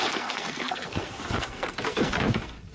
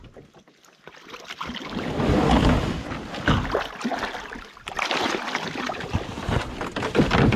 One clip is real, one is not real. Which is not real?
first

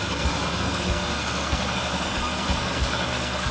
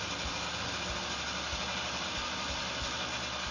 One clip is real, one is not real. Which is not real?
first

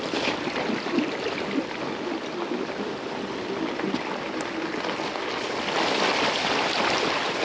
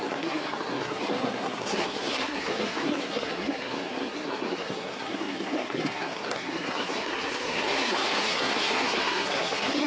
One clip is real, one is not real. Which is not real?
second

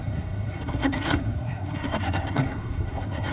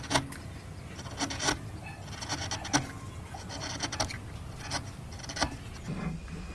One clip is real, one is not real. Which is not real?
first